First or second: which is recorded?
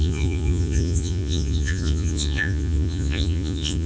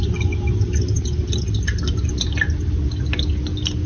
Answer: second